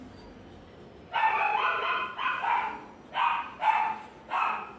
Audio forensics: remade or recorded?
recorded